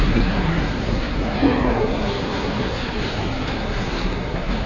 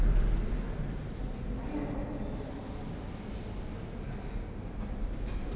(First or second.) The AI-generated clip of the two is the first